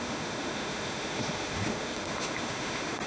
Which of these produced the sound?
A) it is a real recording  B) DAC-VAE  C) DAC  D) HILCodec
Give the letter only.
B